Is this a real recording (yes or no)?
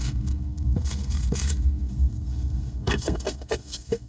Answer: no